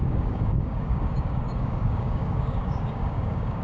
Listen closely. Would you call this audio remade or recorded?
remade